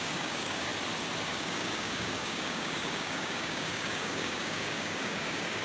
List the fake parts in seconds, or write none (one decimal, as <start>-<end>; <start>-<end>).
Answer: 0.0-0.7; 1.2-5.6